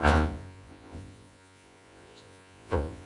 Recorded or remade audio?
remade